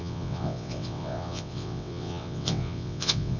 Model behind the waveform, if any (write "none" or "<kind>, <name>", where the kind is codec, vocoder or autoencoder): vocoder, WaveNeXt